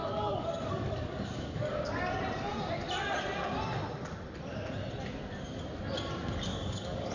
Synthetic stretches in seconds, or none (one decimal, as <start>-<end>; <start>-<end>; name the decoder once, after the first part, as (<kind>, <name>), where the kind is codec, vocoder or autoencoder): 0.0-1.9 (codec, DAC); 6.5-7.1